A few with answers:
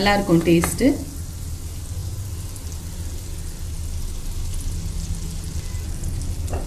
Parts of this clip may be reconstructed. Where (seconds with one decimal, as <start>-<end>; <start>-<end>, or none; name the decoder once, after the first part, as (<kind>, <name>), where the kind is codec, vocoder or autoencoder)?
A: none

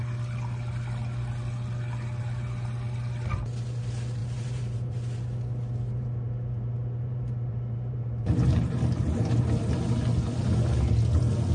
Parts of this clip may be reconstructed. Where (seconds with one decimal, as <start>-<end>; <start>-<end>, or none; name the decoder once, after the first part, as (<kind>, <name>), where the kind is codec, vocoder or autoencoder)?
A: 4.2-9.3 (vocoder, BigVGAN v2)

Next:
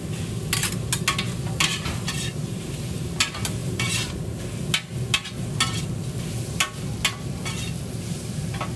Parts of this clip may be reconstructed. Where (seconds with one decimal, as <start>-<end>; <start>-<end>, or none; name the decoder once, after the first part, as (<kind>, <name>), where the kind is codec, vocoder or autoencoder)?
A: 1.7-3.1 (vocoder, BigVGAN v2); 3.6-4.4

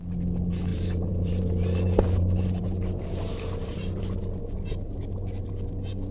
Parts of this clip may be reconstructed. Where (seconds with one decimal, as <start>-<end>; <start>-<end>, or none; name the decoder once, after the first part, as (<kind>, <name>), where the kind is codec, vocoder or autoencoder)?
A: 0.7-4.4 (vocoder, BigVGAN v2)

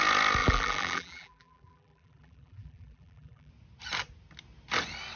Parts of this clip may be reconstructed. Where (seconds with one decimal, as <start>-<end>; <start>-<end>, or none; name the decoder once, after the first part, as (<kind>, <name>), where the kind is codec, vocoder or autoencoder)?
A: 0.4-3.5 (vocoder, BigVGAN v2)

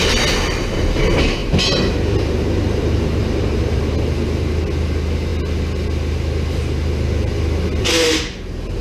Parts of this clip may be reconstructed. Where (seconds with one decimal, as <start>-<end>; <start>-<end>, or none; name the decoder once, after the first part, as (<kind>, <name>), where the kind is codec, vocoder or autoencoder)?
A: 3.2-3.8 (vocoder, BigVGAN v2)

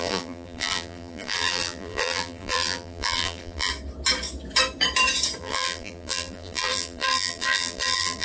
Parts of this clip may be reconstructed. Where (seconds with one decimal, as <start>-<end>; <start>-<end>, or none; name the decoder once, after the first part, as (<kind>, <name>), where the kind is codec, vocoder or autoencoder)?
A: 0.0-3.7 (vocoder, BigVGAN v2); 5.4-8.2

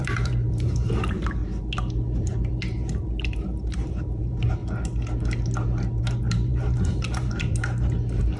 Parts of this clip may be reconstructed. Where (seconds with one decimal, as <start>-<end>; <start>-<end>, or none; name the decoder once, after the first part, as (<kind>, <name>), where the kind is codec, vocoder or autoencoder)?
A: 0.0-1.4 (vocoder, BigVGAN v2); 2.5-4.6; 6.0-8.4